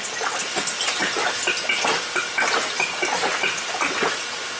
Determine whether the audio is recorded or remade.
recorded